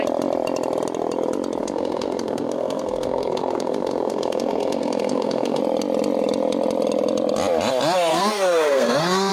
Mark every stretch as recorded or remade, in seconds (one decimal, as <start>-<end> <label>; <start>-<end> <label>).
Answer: 0.0-1.6 recorded; 1.6-5.6 remade; 5.6-8.1 recorded; 8.1-9.3 remade